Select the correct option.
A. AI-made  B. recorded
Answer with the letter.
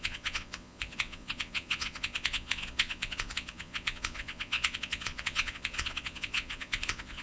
A